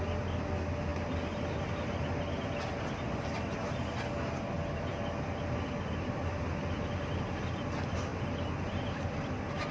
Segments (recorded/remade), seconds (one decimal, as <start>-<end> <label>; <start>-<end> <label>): 0.0-9.7 recorded